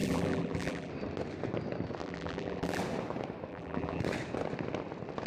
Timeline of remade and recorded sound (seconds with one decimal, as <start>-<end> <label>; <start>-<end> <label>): 0.0-0.9 remade; 0.9-2.0 recorded; 2.0-2.8 remade; 2.8-3.5 recorded; 3.5-4.0 remade; 4.0-5.3 recorded